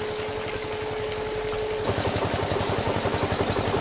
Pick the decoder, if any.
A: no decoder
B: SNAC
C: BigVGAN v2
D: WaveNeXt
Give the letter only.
A